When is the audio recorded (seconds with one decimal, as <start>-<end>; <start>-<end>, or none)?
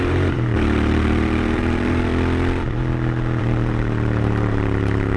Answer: 2.1-3.4